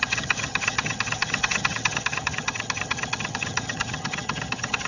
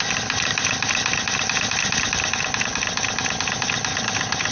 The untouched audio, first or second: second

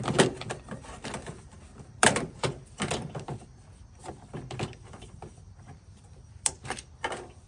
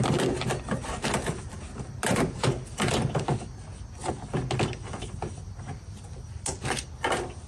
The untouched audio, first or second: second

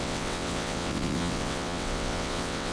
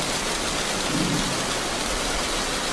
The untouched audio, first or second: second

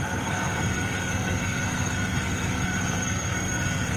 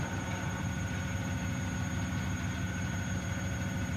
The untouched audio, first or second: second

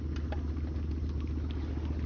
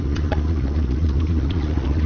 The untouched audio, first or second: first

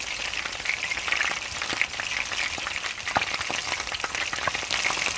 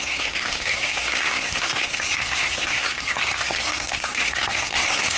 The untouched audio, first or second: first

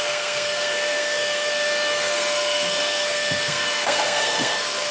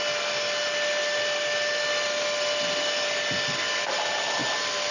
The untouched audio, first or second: second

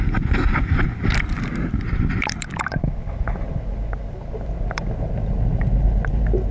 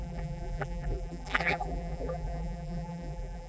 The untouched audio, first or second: first